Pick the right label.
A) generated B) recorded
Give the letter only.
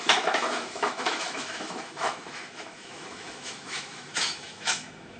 A